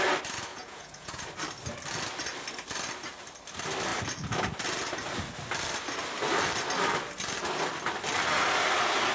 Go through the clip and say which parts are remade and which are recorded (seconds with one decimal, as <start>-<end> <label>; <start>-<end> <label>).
0.0-0.5 recorded; 0.5-1.2 remade; 1.2-9.1 recorded